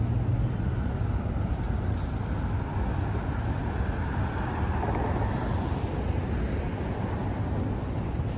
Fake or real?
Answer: real